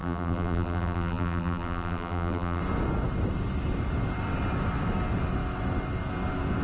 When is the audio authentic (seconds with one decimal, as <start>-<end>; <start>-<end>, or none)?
2.6-6.6